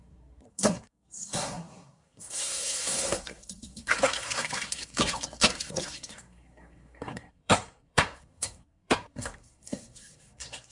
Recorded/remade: remade